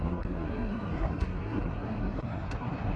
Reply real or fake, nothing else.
fake